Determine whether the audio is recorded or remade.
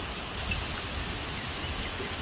recorded